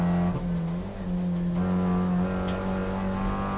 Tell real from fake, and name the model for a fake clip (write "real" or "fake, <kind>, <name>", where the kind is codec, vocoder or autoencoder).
real